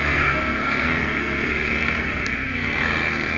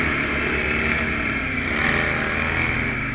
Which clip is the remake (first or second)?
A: first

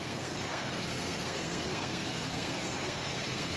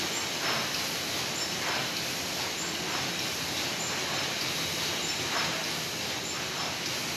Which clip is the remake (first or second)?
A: first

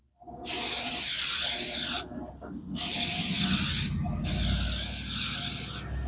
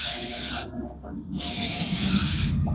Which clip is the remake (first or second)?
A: second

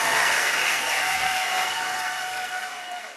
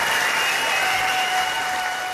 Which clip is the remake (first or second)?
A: first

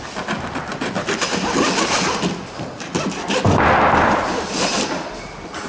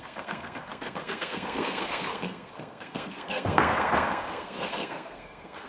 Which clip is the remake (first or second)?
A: second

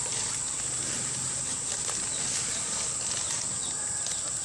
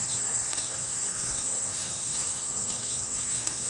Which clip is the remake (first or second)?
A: second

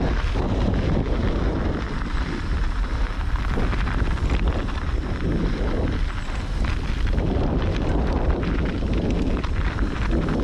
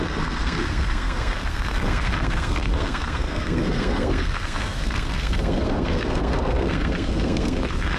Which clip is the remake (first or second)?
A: second